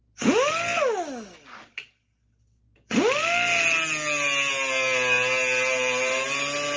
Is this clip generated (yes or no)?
no